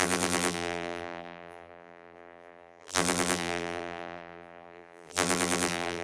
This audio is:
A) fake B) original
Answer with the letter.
A